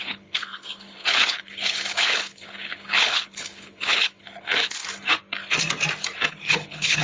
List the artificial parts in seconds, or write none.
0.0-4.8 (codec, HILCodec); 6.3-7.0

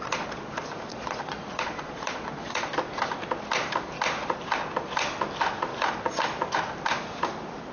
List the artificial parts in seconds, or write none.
0.9-2.7 (vocoder, Vocos)

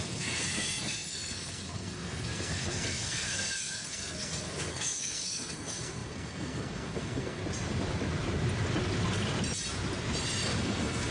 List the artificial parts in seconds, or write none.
0.0-7.4 (codec, SNAC); 10.6-11.1

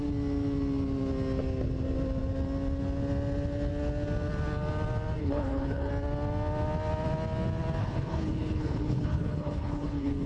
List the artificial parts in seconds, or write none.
5.2-5.9 (codec, HILCodec); 7.8-10.3

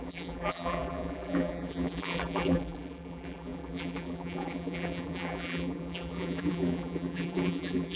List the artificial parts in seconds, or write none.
0.0-8.0 (vocoder, BigVGAN v2)

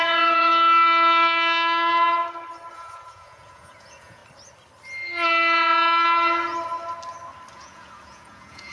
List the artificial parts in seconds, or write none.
0.0-0.5 (vocoder, Vocos); 2.7-4.2; 7.5-8.7

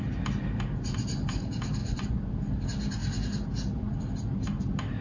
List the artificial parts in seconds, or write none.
1.8-2.3 (vocoder, Vocos)